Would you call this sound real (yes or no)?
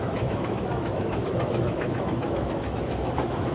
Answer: no